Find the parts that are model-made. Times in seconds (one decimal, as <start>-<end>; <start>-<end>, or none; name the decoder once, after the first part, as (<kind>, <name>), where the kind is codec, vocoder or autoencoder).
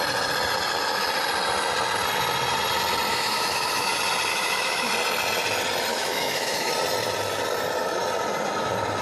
3.1-3.9 (autoencoder, DAC-VAE); 4.3-4.9; 5.9-6.7